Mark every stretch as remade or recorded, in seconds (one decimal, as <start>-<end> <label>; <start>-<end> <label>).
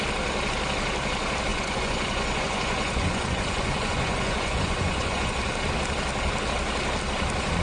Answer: 0.0-1.5 recorded; 1.5-5.3 remade; 5.3-7.6 recorded